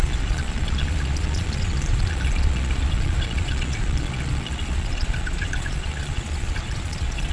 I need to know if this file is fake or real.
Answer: fake